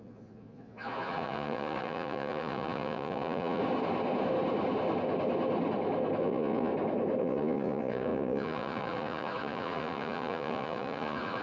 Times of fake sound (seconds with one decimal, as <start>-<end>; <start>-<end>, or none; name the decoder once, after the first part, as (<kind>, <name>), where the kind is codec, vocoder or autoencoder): 0.0-3.6 (vocoder, Vocos); 6.2-6.7; 7.2-11.4